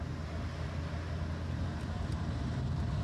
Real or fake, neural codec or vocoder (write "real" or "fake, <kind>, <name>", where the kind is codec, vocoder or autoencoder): real